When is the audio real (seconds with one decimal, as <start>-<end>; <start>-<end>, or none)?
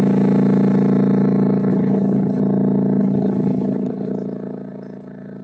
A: 0.0-1.7; 2.4-3.0; 4.1-5.4